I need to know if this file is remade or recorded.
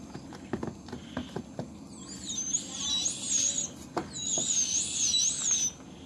recorded